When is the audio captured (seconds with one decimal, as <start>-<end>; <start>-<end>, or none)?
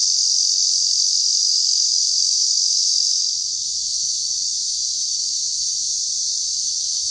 0.0-1.4; 5.9-6.4